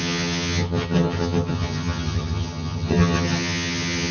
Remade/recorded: remade